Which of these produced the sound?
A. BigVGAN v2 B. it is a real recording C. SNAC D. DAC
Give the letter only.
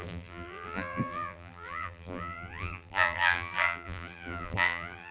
A